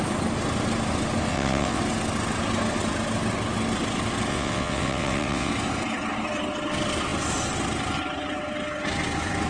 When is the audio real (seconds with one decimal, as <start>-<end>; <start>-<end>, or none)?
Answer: 0.0-1.3; 1.8-4.3; 5.5-9.5